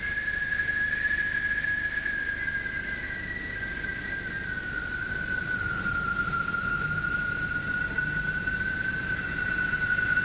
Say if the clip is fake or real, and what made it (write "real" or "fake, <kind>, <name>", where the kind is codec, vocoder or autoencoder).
real